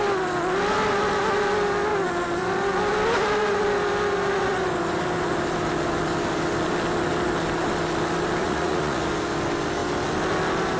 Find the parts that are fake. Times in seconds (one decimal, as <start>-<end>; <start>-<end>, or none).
8.4-9.0